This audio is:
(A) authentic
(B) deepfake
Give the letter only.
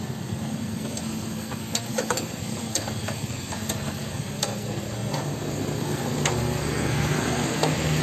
B